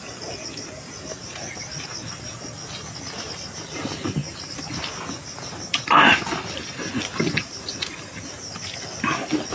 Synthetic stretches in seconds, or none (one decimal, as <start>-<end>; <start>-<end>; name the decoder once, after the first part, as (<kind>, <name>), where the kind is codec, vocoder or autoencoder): none